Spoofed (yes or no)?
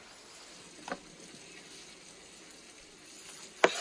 no